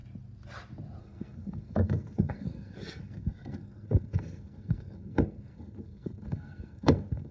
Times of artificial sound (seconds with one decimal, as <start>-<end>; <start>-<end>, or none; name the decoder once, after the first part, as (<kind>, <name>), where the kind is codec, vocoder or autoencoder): 1.0-7.3 (codec, SNAC)